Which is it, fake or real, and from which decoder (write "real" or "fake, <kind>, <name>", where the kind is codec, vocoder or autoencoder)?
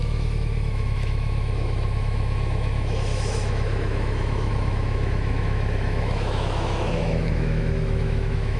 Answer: fake, autoencoder, DAC-VAE